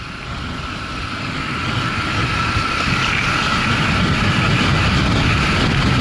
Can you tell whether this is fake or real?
real